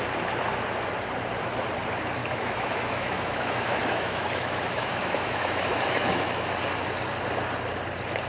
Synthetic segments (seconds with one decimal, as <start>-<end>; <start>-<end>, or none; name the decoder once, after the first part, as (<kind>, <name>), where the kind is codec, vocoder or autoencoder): 2.2-6.5 (autoencoder, DAC-VAE)